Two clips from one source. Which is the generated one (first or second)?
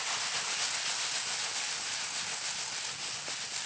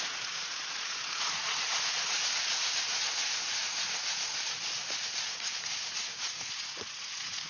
second